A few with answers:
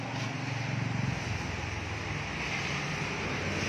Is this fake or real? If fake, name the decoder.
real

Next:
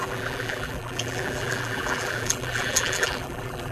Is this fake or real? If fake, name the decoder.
fake, vocoder, BigVGAN v2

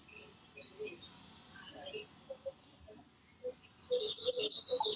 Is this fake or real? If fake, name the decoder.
real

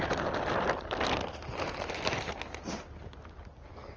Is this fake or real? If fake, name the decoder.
real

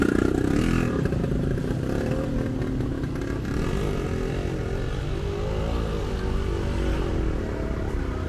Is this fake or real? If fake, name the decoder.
real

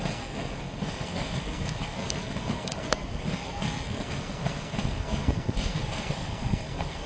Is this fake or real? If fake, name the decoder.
fake, codec, SNAC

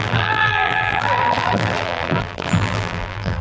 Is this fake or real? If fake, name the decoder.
fake, vocoder, BigVGAN v2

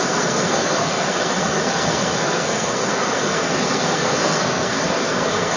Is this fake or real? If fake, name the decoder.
fake, codec, SNAC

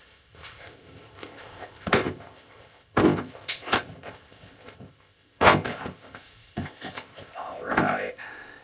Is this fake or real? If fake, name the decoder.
fake, codec, ZipCodec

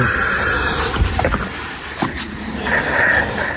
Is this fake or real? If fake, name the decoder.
fake, vocoder, BigVGAN v2